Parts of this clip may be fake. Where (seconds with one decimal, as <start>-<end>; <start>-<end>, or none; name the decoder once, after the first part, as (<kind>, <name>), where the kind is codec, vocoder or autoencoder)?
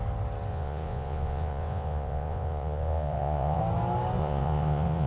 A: 0.5-3.6 (vocoder, Vocos); 4.2-5.1